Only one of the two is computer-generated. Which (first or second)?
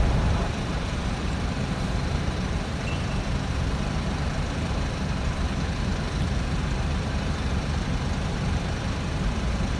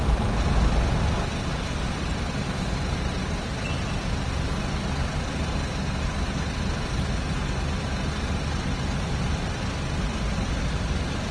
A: first